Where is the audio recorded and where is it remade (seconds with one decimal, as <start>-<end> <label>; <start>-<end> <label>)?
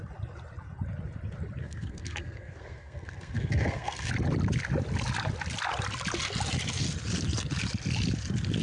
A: 0.0-1.6 recorded; 1.6-4.1 remade; 4.1-8.6 recorded